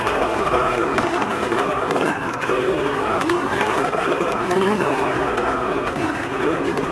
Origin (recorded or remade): remade